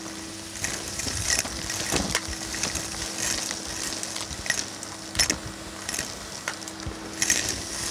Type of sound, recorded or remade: recorded